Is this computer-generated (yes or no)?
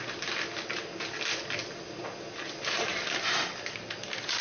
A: no